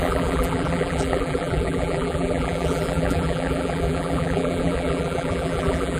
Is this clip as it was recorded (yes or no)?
no